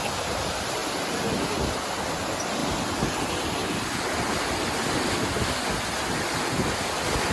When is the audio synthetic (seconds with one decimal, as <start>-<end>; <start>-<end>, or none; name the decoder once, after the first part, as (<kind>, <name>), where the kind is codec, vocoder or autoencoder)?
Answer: none